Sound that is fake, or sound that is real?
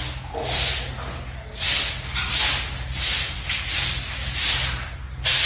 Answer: real